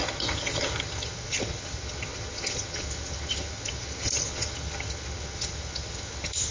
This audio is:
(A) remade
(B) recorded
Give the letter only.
A